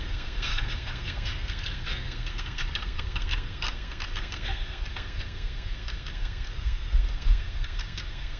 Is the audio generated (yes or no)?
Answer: yes